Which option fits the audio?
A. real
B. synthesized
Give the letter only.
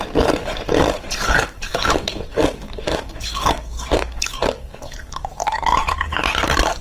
B